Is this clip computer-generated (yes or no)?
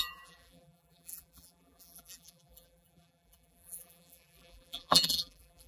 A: yes